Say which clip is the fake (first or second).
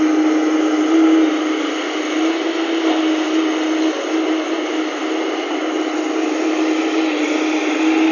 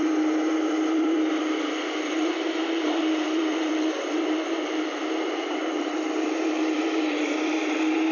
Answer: second